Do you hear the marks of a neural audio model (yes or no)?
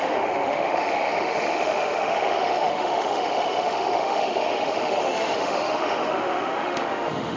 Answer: yes